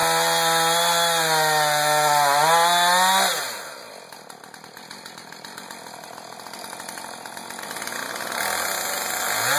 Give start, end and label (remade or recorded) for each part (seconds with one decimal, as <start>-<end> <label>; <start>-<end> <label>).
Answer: 0.0-9.6 recorded